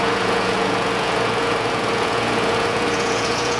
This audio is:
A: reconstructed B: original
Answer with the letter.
A